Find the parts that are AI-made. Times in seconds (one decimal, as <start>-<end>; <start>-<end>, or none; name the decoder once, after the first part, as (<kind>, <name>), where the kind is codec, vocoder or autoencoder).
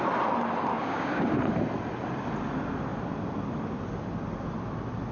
0.7-1.2 (codec, DAC)